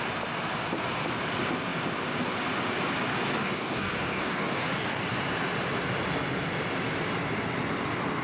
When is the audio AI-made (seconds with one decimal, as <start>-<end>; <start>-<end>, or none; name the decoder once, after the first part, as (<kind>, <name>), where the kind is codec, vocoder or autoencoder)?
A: 3.4-5.0 (codec, DAC)